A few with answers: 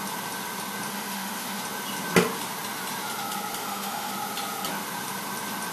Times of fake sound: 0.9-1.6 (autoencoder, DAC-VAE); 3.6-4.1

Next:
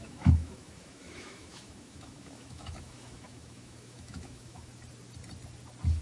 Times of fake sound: 0.0-4.7 (autoencoder, DAC-VAE)

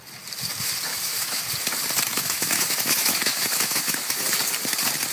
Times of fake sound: 0.9-1.4 (autoencoder, DAC-VAE); 2.1-4.2

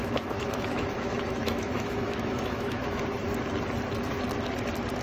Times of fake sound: 0.0-3.0 (autoencoder, DAC-VAE)